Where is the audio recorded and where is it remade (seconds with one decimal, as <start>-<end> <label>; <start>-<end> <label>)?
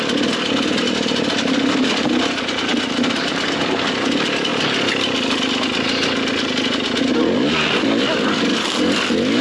0.0-9.4 recorded